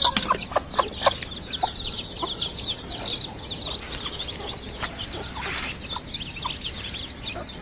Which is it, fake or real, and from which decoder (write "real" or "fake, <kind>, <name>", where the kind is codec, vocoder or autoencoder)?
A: real